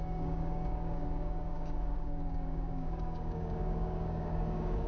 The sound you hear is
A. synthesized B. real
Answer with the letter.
A